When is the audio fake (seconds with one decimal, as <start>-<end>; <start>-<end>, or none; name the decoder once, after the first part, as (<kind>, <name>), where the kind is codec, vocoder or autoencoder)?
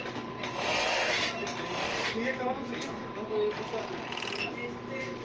none